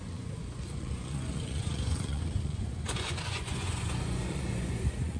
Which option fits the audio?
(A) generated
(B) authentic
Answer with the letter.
A